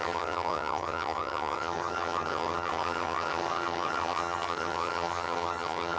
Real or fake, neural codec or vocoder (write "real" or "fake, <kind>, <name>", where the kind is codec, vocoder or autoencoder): fake, vocoder, HiFi-GAN